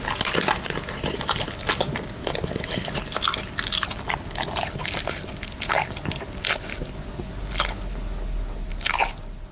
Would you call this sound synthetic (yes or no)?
no